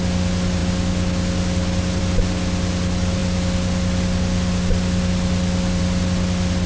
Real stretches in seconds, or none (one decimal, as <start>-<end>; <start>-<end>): 0.0-6.7